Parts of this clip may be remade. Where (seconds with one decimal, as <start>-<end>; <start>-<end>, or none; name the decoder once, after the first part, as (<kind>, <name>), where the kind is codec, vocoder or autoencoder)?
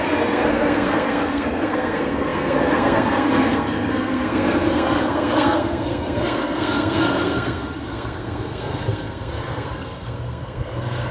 0.0-11.1 (codec, SNAC)